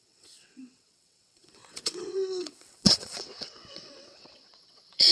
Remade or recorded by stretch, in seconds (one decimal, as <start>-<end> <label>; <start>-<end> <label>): 0.0-5.1 remade